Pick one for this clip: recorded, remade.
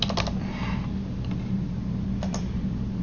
recorded